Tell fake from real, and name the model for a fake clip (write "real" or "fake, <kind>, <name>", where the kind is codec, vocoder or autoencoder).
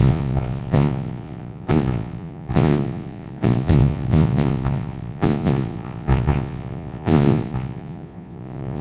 fake, vocoder, Vocos